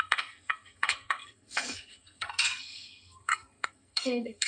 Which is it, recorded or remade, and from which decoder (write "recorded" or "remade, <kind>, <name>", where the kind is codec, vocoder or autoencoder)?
remade, codec, SNAC